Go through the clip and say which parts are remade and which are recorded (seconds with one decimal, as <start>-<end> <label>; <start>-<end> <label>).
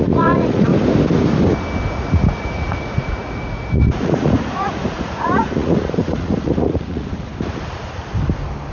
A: 0.0-0.7 remade; 0.7-1.9 recorded; 1.9-7.3 remade; 7.3-8.7 recorded